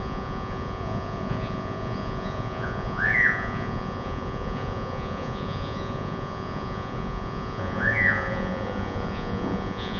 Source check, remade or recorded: remade